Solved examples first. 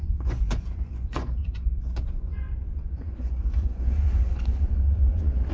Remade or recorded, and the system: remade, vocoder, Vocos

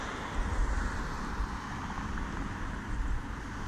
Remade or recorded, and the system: recorded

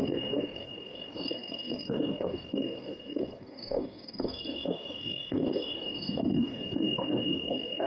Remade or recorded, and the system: remade, codec, DAC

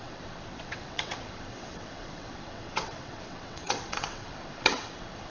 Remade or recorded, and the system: remade, vocoder, WaveNeXt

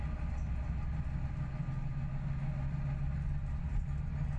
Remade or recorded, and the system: recorded